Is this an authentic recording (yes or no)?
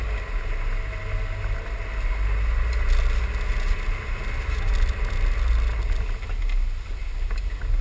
yes